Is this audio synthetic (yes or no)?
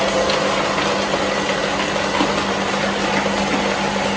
no